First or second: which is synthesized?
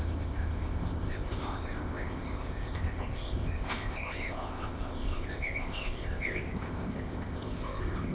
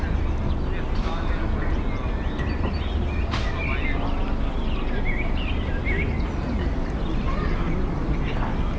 first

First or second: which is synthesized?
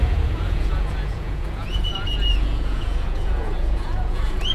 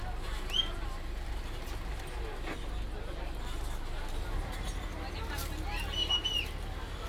first